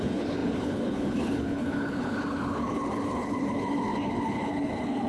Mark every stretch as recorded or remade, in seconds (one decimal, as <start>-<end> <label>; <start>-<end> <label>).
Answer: 0.0-5.1 remade